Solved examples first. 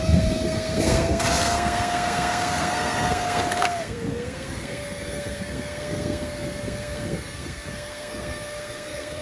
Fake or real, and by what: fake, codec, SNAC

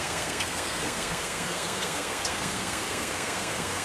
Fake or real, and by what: fake, codec, SNAC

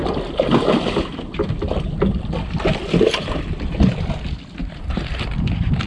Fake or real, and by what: real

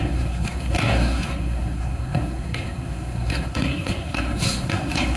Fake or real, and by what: fake, codec, SNAC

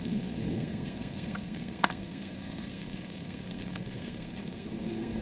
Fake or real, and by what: fake, codec, SNAC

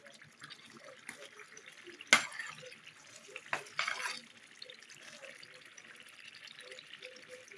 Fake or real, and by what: real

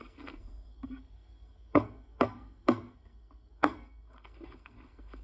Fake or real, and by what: fake, codec, SNAC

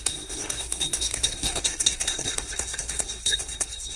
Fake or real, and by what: fake, codec, SNAC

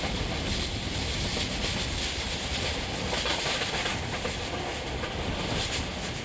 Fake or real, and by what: real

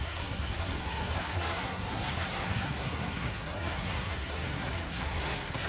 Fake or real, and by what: fake, codec, SNAC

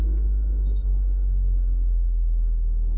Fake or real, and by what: fake, codec, SNAC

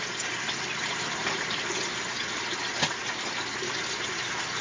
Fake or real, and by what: real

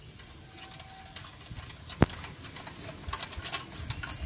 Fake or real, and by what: real